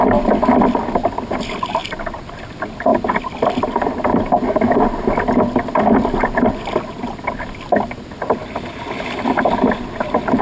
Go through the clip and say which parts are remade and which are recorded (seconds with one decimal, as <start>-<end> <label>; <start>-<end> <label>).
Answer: 0.0-10.4 recorded